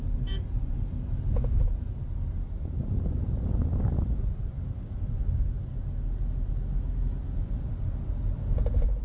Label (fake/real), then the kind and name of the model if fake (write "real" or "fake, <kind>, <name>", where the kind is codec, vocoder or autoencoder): real